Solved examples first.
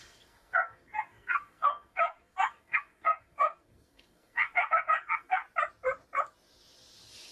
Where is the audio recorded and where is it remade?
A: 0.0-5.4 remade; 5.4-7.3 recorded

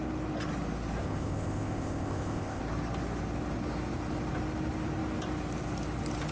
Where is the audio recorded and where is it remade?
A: 0.0-1.0 recorded; 1.0-2.6 remade; 2.6-6.3 recorded

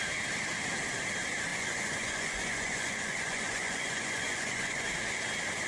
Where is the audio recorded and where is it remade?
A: 0.0-1.5 recorded; 1.5-4.9 remade; 4.9-5.7 recorded

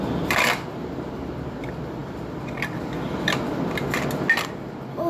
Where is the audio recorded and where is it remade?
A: 0.0-5.1 recorded

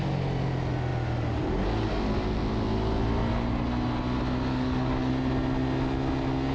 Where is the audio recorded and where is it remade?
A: 0.0-4.5 recorded; 4.5-5.1 remade; 5.1-6.5 recorded

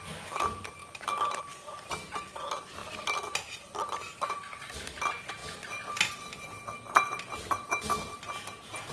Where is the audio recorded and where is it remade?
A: 0.0-8.9 recorded

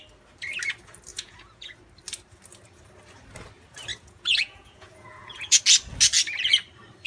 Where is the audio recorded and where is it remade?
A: 0.0-1.1 recorded; 1.1-1.8 remade; 1.8-3.9 recorded; 3.9-5.6 remade; 5.6-7.1 recorded